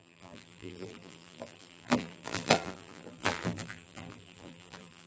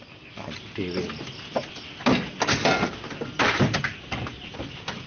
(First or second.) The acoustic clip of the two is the second